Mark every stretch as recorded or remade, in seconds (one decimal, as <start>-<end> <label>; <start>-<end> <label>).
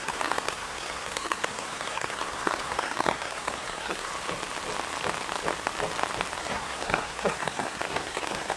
0.0-4.1 remade; 4.1-6.4 recorded; 6.4-8.6 remade